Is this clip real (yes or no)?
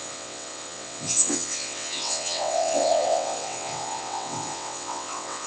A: no